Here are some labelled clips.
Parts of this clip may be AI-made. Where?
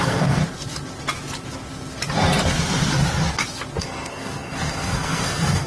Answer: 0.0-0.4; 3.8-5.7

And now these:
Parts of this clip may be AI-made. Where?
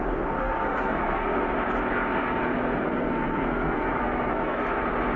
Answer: 0.4-1.4; 2.9-4.6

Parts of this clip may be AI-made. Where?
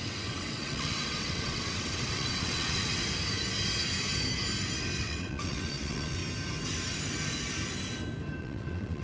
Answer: 0.0-3.0; 5.0-6.2; 8.4-9.0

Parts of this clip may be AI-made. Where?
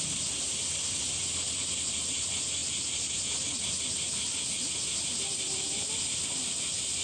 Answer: 0.0-2.6; 5.2-7.0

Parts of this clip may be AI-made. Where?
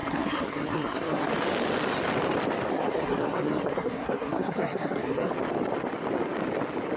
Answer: 0.0-1.3; 2.7-5.3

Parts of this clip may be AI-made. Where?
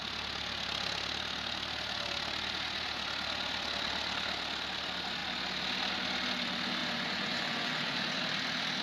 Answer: 6.8-8.2